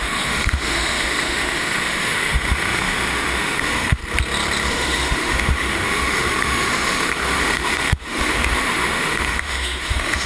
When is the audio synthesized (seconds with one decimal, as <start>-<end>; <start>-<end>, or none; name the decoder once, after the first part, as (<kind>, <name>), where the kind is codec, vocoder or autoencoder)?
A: 0.0-4.0 (autoencoder, DAC-VAE); 4.7-10.3